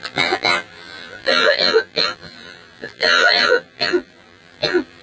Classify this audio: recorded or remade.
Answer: remade